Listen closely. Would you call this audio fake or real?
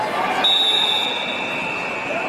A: real